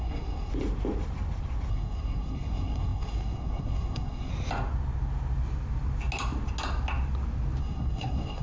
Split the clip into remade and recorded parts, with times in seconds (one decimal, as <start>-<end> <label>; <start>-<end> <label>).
0.0-0.5 remade; 0.5-1.7 recorded; 1.7-4.3 remade; 4.3-7.6 recorded; 7.6-8.4 remade